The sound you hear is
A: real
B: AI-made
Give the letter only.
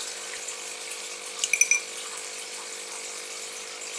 A